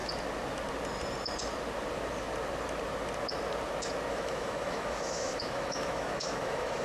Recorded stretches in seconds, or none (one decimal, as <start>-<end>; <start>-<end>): 0.0-4.1